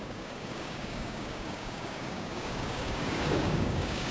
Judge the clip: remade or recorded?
remade